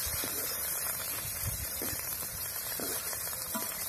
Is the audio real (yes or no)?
no